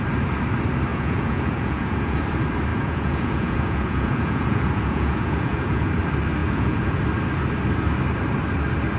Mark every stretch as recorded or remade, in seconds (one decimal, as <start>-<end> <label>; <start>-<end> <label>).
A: 0.0-0.9 recorded; 0.9-2.2 remade; 2.2-2.7 recorded; 2.7-5.9 remade; 5.9-6.4 recorded; 6.4-7.0 remade; 7.0-9.0 recorded